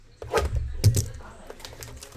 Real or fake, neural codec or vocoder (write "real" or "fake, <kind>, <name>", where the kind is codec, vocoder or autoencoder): real